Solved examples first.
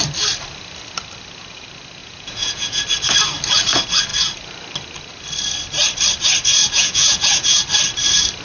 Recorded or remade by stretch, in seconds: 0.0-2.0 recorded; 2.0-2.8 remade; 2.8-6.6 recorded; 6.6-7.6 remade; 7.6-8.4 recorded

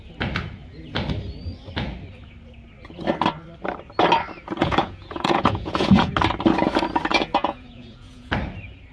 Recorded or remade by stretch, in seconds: 0.0-4.6 recorded; 4.6-6.1 remade; 6.1-7.1 recorded; 7.1-8.3 remade; 8.3-8.9 recorded

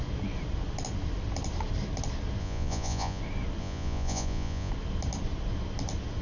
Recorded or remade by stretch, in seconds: 0.0-2.4 recorded; 2.4-3.2 remade; 3.2-3.6 recorded; 3.6-4.7 remade; 4.7-6.2 recorded

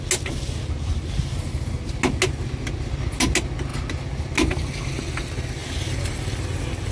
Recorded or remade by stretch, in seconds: 0.0-6.9 recorded

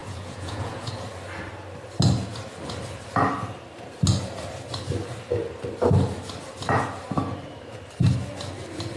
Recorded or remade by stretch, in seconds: 0.0-0.9 remade; 0.9-9.0 recorded